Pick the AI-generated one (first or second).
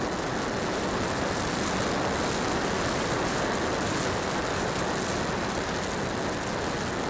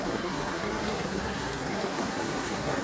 second